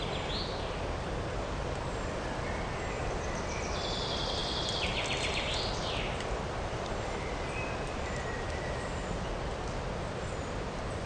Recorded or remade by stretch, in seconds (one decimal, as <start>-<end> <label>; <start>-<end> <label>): 0.0-11.1 recorded